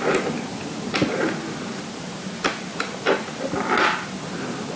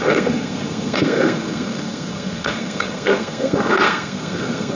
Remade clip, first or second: second